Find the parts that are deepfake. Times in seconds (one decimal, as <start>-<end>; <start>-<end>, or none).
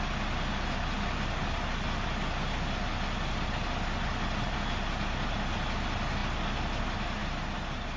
none